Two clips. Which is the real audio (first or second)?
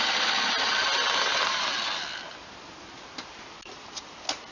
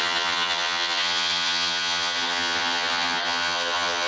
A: first